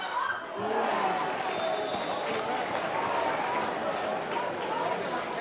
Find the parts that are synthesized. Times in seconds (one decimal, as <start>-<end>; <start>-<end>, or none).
none